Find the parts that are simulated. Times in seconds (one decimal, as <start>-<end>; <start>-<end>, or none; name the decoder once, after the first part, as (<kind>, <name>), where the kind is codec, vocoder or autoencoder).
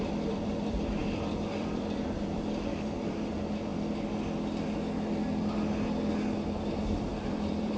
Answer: 0.0-3.7 (vocoder, BigVGAN v2); 6.7-7.8